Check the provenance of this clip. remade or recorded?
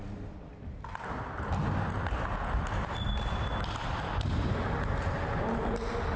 recorded